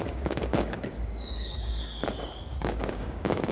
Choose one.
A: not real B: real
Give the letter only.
A